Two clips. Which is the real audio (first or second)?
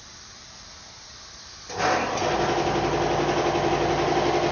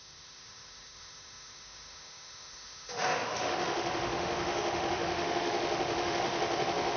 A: first